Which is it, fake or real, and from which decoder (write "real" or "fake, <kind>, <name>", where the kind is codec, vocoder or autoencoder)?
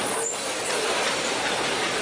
fake, vocoder, BigVGAN v2